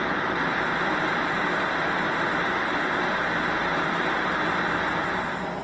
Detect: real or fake real